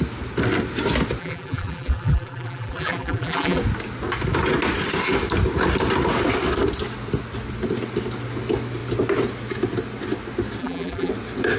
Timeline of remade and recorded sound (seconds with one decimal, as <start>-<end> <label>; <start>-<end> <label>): 0.0-1.2 recorded; 1.2-3.6 remade; 3.6-10.6 recorded; 10.6-11.1 remade; 11.1-11.6 recorded